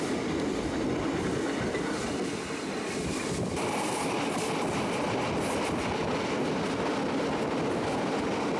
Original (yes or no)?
yes